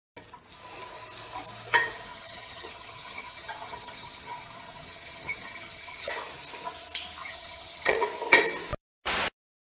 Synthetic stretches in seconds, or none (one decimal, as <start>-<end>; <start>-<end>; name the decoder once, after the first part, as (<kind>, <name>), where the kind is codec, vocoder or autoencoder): 2.1-6.1 (vocoder, HiFi-GAN); 7.2-8.0